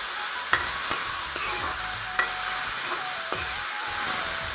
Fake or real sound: real